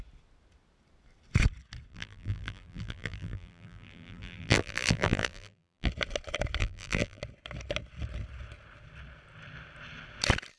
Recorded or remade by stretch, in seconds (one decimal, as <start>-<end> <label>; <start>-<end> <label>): 0.0-1.9 recorded; 1.9-5.9 remade; 5.9-6.6 recorded; 6.6-7.2 remade; 7.2-10.6 recorded